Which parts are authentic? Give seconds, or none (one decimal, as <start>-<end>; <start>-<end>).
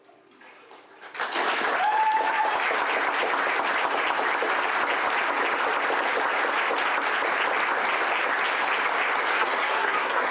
0.0-9.3